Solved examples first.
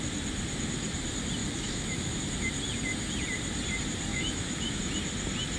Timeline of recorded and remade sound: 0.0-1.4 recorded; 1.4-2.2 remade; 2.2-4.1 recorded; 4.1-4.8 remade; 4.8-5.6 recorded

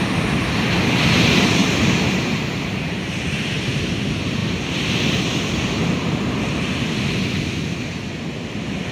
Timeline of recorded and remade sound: 0.0-1.6 recorded; 1.6-4.0 remade; 4.0-8.9 recorded

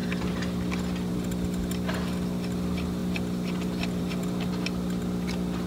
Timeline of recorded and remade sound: 0.0-5.7 recorded

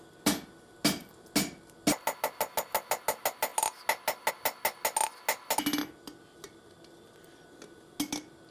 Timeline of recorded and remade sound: 0.0-8.5 recorded